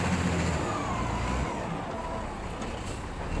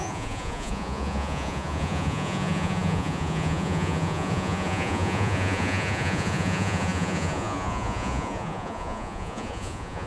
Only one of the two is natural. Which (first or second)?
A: first